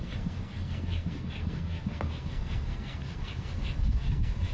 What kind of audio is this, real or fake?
fake